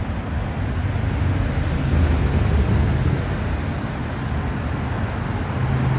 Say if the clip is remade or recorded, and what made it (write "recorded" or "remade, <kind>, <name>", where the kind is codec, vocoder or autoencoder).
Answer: recorded